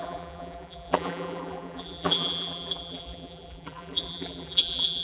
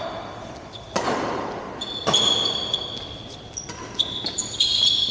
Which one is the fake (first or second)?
first